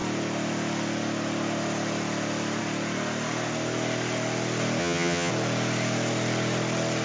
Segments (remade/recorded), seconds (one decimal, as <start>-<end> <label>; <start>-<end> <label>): 0.0-4.8 recorded; 4.8-5.3 remade; 5.3-7.0 recorded